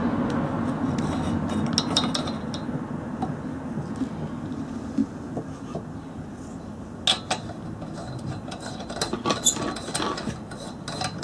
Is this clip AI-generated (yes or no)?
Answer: no